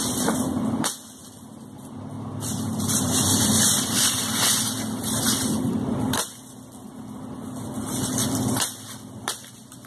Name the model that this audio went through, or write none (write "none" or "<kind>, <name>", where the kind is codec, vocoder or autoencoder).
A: vocoder, BigVGAN v2